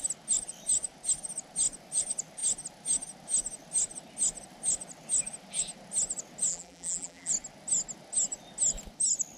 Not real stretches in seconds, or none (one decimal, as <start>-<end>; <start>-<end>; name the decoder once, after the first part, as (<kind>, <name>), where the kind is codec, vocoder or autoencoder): 6.5-7.3 (vocoder, BigVGAN v2)